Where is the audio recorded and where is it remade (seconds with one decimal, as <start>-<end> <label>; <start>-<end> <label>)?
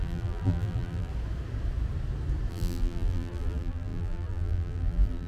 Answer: 0.0-1.1 remade; 1.1-2.5 recorded; 2.5-5.3 remade